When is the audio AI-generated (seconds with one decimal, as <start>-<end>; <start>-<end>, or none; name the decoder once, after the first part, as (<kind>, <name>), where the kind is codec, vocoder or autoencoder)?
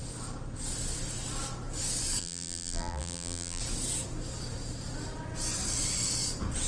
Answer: 2.2-3.6 (vocoder, BigVGAN v2)